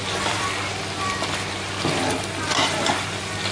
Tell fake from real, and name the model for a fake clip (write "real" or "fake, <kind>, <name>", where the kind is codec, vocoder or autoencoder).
real